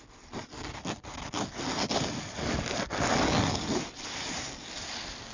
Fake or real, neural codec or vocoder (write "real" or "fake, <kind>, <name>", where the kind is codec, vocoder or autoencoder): real